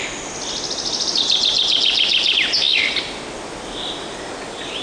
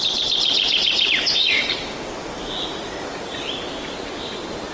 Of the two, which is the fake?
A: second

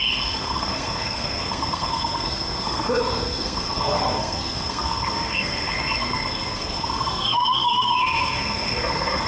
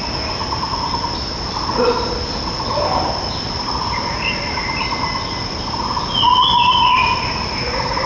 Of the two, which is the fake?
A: first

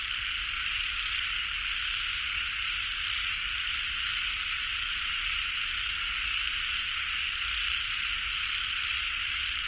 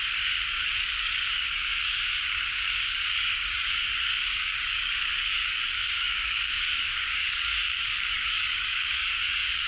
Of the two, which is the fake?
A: second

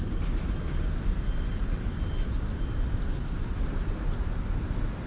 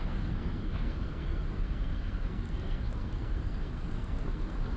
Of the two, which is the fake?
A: second